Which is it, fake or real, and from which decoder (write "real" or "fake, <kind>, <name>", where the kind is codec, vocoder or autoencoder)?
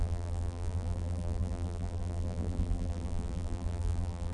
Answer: fake, vocoder, BigVGAN v2